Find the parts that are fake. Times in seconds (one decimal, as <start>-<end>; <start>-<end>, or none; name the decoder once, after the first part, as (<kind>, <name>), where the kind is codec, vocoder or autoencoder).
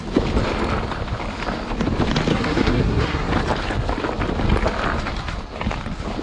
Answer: 2.3-3.3 (codec, SNAC)